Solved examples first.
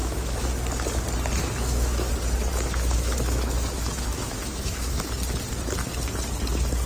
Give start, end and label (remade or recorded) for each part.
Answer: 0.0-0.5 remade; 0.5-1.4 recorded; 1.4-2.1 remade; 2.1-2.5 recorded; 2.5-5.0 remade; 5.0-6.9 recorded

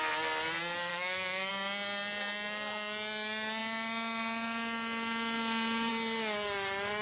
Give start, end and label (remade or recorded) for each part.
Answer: 0.0-0.9 recorded; 0.9-1.5 remade; 1.5-7.0 recorded

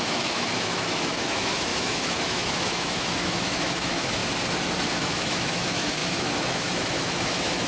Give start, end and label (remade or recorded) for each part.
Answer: 0.0-4.2 remade; 4.2-4.9 recorded; 4.9-7.7 remade